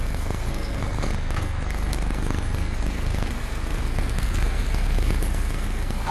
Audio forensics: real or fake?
fake